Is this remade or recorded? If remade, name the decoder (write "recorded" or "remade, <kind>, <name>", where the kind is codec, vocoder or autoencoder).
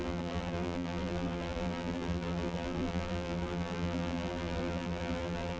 remade, vocoder, BigVGAN v2